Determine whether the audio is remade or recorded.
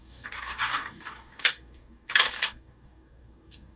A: remade